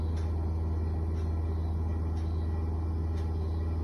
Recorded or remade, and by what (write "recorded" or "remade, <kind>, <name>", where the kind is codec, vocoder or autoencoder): recorded